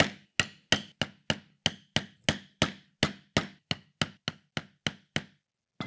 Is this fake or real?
real